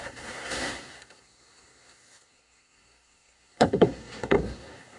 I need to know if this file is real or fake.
fake